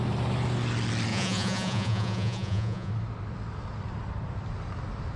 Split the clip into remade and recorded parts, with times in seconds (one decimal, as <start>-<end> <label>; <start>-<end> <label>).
0.0-1.1 recorded; 1.1-2.9 remade; 2.9-5.2 recorded